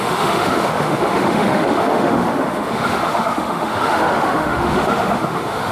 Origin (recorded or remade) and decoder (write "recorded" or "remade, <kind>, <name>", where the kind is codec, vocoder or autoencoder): remade, autoencoder, DAC-VAE